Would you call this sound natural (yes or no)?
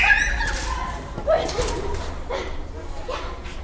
yes